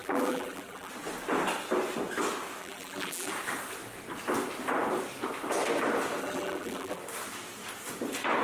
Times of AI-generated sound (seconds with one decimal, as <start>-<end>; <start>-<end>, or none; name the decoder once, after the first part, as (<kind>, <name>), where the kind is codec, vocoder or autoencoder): 0.0-0.9 (vocoder, BigVGAN v2); 2.6-3.3; 6.2-7.0